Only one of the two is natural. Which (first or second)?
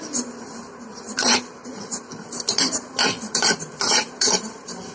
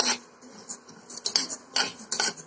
second